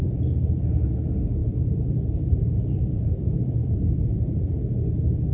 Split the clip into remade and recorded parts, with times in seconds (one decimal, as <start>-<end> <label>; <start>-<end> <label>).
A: 0.0-0.7 remade; 0.7-1.4 recorded; 1.4-4.6 remade; 4.6-5.3 recorded